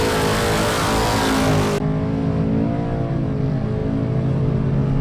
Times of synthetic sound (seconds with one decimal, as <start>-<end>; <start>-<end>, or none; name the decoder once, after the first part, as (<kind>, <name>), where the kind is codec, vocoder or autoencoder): none